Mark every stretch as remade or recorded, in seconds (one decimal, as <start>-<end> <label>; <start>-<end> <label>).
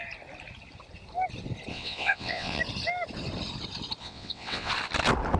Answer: 0.0-1.7 recorded; 1.7-2.6 remade; 2.6-4.0 recorded; 4.0-4.7 remade; 4.7-5.4 recorded